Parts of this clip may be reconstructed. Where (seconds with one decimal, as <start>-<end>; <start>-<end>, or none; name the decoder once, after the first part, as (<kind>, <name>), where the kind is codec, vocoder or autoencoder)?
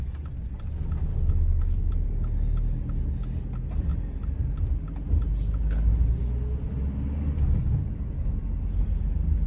1.1-1.9 (codec, HILCodec)